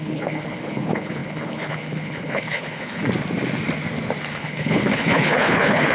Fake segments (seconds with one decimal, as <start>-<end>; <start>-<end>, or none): 0.0-3.0; 4.3-5.9